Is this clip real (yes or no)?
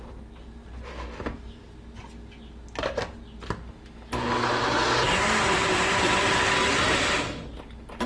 yes